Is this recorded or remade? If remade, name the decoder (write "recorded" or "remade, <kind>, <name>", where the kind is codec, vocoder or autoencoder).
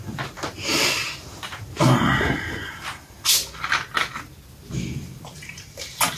recorded